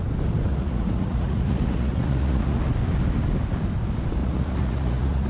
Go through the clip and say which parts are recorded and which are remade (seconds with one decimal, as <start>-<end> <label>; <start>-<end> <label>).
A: 0.0-0.5 recorded; 0.5-2.6 remade; 2.6-4.2 recorded; 4.2-5.3 remade